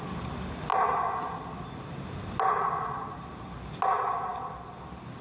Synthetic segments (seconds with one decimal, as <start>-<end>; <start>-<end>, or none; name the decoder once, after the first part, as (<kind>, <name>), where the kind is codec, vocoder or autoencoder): none